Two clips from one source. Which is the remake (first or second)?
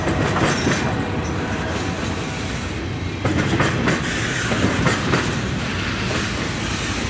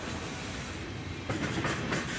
second